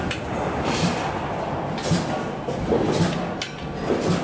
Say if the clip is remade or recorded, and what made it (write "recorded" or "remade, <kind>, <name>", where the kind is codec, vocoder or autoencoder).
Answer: recorded